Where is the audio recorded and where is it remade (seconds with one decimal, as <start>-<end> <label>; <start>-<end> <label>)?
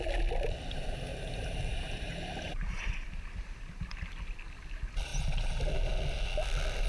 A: 0.0-1.1 recorded; 1.1-2.8 remade; 2.8-6.9 recorded